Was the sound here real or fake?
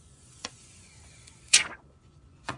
fake